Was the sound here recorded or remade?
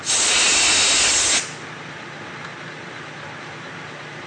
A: recorded